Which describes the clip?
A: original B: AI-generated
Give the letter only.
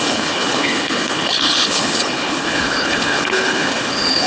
B